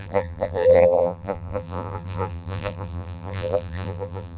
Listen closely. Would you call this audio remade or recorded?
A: remade